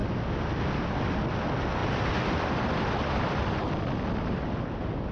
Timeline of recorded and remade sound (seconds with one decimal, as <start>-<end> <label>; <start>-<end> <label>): 0.0-1.8 recorded; 1.8-4.4 remade; 4.4-5.1 recorded